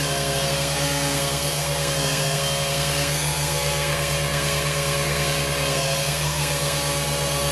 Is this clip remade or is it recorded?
remade